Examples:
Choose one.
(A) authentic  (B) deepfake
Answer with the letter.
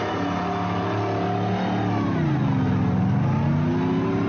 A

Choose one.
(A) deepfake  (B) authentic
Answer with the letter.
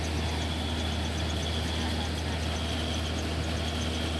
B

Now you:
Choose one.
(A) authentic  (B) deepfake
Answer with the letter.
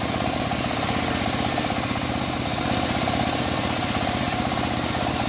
A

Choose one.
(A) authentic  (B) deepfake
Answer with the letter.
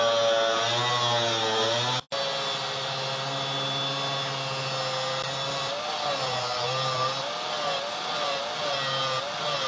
A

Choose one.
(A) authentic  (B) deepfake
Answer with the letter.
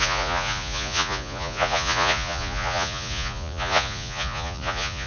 B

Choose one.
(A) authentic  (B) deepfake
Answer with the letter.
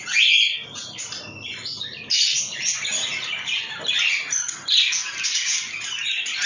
A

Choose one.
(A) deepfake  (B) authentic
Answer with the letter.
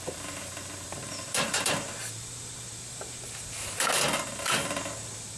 A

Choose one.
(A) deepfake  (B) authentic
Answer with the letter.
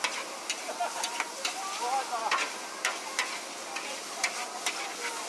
B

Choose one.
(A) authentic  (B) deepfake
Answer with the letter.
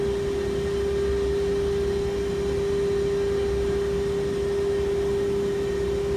A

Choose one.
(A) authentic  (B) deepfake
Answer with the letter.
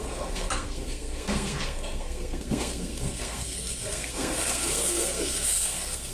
B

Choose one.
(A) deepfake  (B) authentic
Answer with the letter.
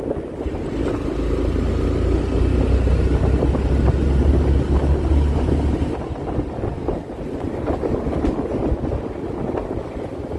B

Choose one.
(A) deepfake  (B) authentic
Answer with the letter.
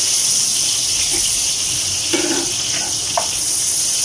B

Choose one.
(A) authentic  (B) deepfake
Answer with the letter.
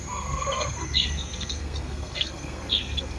B